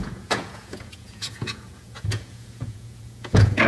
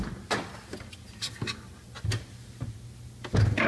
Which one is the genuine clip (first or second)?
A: second